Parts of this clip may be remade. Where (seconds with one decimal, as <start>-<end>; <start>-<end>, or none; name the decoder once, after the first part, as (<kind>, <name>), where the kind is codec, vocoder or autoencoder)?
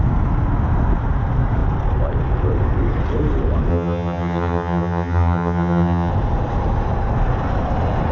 3.7-6.1 (vocoder, HiFi-GAN)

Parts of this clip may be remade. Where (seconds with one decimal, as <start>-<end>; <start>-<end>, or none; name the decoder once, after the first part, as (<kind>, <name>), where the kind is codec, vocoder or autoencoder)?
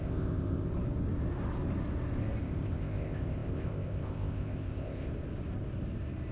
0.0-0.7 (codec, ZipCodec); 2.4-5.1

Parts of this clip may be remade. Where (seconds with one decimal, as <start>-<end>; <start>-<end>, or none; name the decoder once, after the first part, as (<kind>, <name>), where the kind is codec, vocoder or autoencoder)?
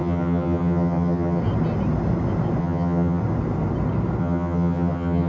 0.0-1.4 (vocoder, HiFi-GAN); 2.6-3.2; 4.2-5.3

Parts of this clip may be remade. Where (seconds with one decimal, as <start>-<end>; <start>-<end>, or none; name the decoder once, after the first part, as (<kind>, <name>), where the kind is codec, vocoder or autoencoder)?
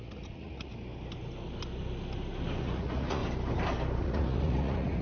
0.0-0.7 (vocoder, Vocos); 2.6-3.2; 4.0-5.0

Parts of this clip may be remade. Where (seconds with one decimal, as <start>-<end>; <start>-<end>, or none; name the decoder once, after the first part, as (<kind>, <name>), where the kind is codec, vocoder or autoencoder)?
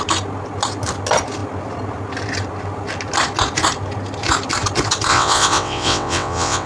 5.1-6.7 (vocoder, WaveNeXt)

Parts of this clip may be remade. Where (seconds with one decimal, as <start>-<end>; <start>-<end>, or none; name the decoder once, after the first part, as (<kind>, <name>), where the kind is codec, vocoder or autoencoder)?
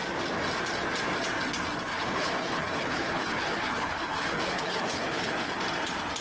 1.9-5.6 (codec, HILCodec)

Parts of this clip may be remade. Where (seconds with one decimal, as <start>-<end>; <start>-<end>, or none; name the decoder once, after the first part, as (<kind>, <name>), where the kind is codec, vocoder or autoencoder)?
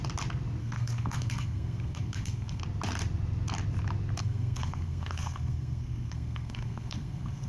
0.6-2.6 (codec, SNAC); 4.2-7.5